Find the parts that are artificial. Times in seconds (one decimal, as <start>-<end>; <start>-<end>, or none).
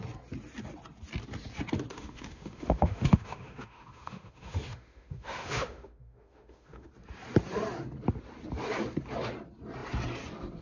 1.9-6.9